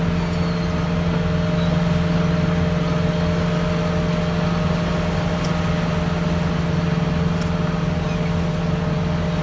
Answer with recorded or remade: recorded